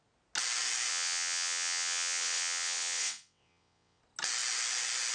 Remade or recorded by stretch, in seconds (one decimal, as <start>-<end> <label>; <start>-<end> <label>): 0.0-0.9 recorded; 0.9-4.0 remade; 4.0-5.1 recorded